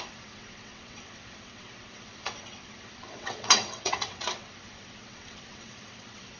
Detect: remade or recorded remade